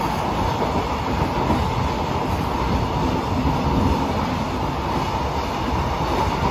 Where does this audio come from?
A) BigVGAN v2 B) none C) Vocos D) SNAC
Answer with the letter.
B